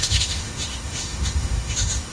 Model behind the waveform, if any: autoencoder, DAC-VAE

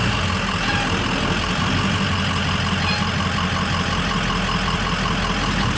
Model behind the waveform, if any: none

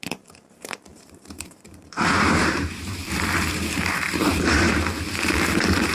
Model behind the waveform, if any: vocoder, BigVGAN v2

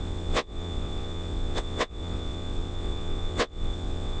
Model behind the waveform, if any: vocoder, WaveNeXt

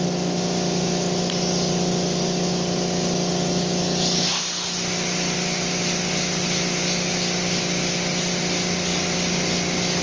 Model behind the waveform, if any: none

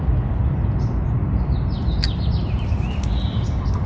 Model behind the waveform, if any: none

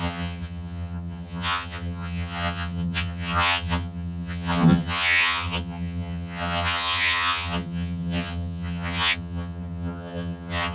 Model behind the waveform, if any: vocoder, HiFi-GAN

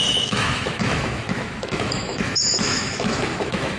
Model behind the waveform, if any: autoencoder, DAC-VAE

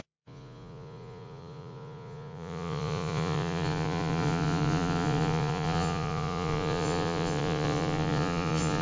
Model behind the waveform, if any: vocoder, Vocos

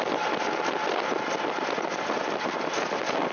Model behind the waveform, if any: none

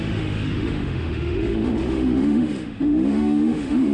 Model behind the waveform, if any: autoencoder, DAC-VAE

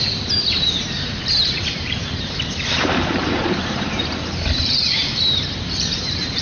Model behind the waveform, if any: vocoder, BigVGAN v2